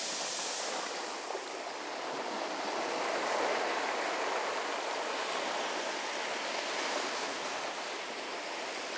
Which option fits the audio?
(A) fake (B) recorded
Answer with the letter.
B